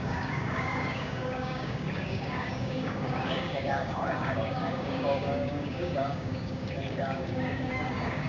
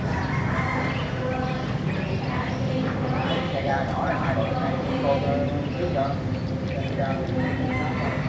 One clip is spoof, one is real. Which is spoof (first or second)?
first